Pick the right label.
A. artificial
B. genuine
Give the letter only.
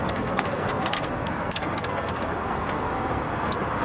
A